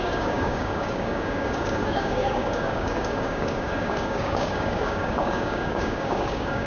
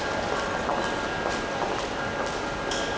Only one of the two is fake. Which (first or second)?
first